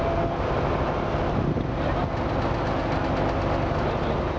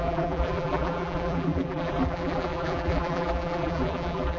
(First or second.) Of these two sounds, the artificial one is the second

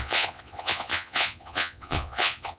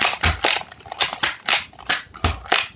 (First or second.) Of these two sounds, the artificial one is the first